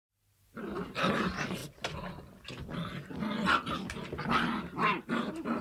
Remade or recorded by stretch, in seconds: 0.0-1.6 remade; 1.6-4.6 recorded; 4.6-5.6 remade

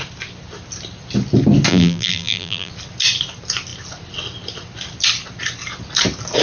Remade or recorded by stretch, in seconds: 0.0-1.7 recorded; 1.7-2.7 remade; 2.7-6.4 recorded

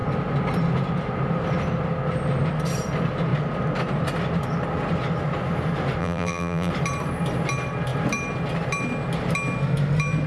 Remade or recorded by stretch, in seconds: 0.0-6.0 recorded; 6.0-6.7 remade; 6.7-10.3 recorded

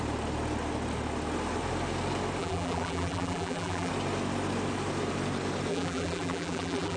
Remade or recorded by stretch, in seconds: 0.0-2.4 recorded; 2.4-3.9 remade; 3.9-5.7 recorded; 5.7-7.0 remade